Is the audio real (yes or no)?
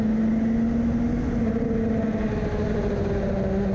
yes